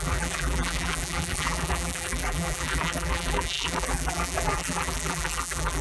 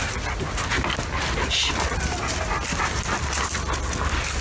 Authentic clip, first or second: second